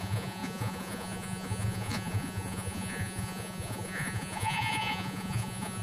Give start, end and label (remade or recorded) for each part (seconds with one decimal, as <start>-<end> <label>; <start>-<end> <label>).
0.0-5.8 remade